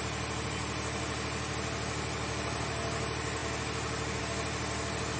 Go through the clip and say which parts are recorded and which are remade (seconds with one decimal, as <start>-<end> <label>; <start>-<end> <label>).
0.0-5.2 recorded